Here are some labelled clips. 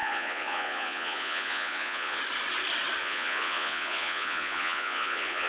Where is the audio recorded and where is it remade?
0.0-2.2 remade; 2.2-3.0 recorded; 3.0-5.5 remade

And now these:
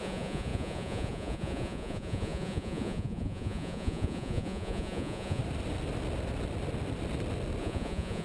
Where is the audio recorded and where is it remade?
0.0-5.4 remade; 5.4-7.6 recorded; 7.6-8.2 remade

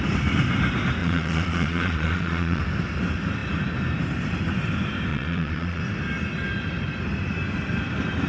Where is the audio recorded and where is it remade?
0.0-1.0 recorded; 1.0-2.6 remade; 2.6-5.1 recorded; 5.1-5.8 remade; 5.8-8.3 recorded

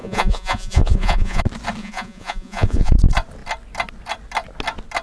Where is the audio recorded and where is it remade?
0.0-1.4 remade; 1.4-1.8 recorded; 1.8-2.9 remade; 2.9-5.0 recorded

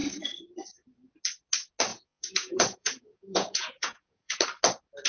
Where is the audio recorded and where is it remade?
0.0-1.9 recorded; 1.9-4.4 remade; 4.4-5.1 recorded

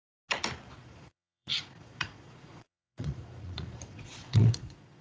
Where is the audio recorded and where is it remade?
0.0-0.7 recorded; 0.7-5.0 remade